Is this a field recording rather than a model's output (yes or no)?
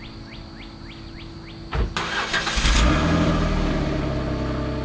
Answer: yes